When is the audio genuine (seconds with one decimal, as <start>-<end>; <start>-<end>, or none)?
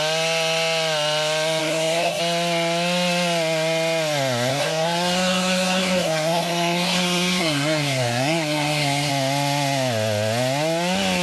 0.0-1.6; 2.2-4.5; 9.1-11.2